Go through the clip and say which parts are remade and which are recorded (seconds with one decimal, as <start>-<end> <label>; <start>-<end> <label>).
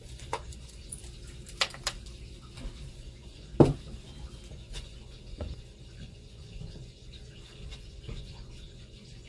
0.0-1.0 remade; 1.0-2.9 recorded; 2.9-3.5 remade; 3.5-4.5 recorded; 4.5-9.3 remade